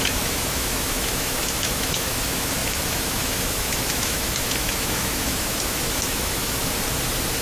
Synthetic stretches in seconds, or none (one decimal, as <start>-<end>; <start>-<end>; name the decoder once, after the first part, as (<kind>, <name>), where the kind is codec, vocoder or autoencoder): 0.0-6.6 (autoencoder, DAC-VAE)

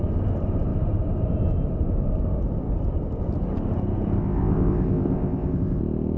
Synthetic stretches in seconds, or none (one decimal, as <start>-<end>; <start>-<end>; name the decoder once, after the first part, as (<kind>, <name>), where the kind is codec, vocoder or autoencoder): 4.2-5.8 (codec, ZipCodec)